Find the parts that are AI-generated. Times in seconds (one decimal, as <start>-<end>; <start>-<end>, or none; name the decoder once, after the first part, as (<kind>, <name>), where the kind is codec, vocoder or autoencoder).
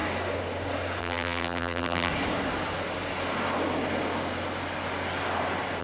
1.0-2.1 (vocoder, BigVGAN v2)